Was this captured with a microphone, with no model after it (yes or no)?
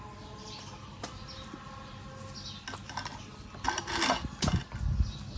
yes